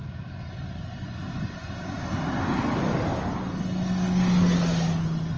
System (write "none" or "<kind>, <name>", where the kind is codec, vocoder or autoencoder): none